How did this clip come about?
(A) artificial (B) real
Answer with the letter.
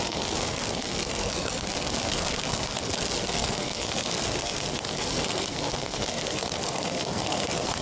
A